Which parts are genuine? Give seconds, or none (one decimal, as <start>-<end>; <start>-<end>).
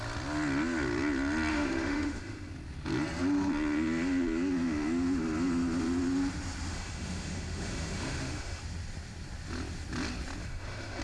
0.0-1.5; 2.5-6.7; 8.6-10.4